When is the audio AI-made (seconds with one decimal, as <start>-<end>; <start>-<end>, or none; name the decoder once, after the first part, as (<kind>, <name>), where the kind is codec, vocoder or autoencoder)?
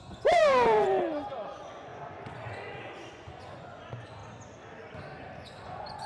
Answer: 0.0-4.2 (vocoder, Vocos); 5.4-6.1